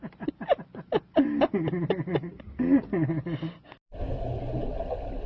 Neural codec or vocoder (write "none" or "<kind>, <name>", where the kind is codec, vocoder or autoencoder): none